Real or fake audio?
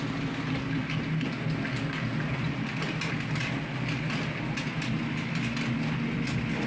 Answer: real